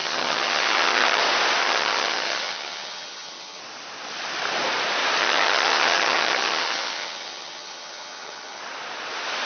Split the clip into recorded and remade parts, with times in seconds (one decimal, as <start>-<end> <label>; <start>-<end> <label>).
0.0-1.2 remade; 1.2-1.6 recorded; 1.6-3.6 remade; 3.6-5.2 recorded; 5.2-8.6 remade; 8.6-9.5 recorded